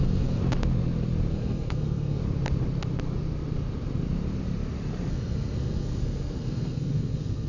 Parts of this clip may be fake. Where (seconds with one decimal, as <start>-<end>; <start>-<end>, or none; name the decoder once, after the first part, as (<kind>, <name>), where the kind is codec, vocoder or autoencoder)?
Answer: 0.0-0.4 (codec, SNAC); 1.3-2.2; 5.1-7.5